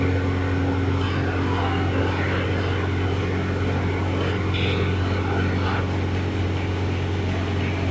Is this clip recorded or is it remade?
recorded